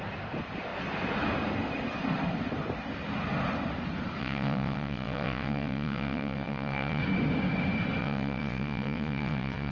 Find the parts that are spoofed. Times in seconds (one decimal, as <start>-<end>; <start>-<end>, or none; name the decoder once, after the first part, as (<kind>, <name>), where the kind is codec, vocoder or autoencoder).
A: 4.2-7.0 (vocoder, WaveNeXt); 8.0-9.7